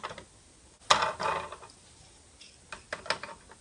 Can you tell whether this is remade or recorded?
recorded